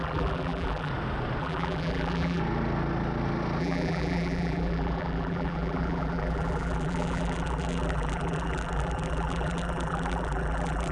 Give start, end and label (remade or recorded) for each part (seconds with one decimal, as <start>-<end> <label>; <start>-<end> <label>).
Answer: 0.0-0.9 remade; 0.9-1.4 recorded; 1.4-2.4 remade; 2.4-3.6 recorded; 3.6-10.9 remade